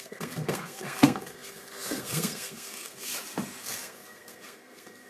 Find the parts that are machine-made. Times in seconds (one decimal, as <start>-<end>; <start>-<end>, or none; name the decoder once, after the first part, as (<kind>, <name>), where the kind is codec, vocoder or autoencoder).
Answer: 0.0-3.1 (codec, SNAC); 3.6-5.1